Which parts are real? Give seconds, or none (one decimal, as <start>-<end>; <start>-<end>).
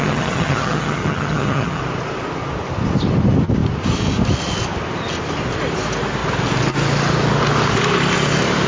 1.8-8.7